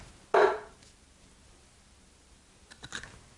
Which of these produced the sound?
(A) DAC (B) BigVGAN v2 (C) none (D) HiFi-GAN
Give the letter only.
C